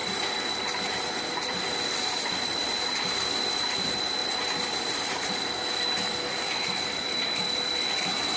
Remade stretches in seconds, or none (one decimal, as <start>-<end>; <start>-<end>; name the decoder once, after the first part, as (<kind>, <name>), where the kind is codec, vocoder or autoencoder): 0.0-2.9 (vocoder, BigVGAN v2); 4.2-7.8